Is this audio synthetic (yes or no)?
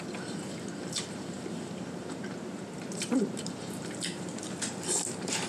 yes